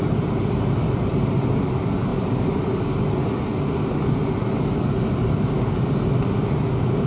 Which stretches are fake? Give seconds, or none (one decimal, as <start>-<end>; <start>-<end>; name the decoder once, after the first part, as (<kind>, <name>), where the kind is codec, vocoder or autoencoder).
none